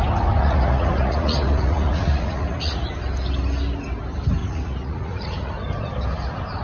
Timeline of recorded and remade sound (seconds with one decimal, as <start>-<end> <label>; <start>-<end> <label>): 0.0-0.4 recorded; 0.4-2.9 remade; 2.9-4.4 recorded; 4.4-5.5 remade; 5.5-6.6 recorded